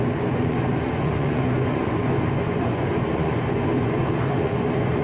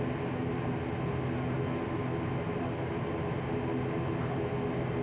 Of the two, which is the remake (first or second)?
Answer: first